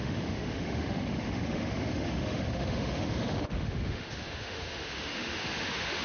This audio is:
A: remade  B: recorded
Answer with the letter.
A